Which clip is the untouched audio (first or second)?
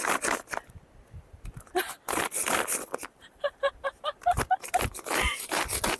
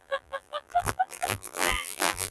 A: first